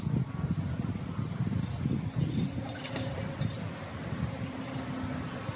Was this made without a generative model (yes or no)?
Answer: yes